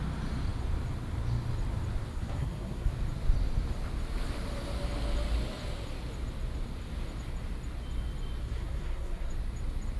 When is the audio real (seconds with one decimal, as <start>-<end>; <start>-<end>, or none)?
0.0-2.1; 2.9-8.4; 9.3-10.0